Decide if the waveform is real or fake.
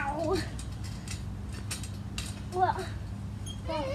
real